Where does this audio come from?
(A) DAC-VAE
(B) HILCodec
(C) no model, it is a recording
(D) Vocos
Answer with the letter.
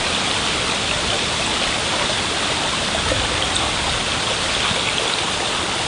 C